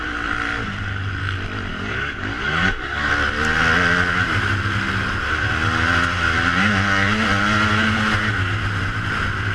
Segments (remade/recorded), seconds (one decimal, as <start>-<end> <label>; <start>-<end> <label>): 0.0-1.7 recorded; 1.7-3.1 remade; 3.1-9.5 recorded